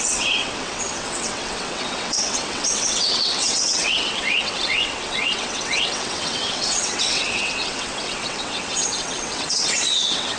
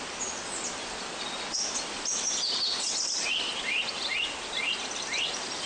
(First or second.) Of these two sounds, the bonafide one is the second